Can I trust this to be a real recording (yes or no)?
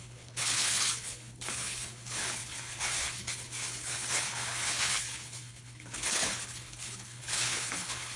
no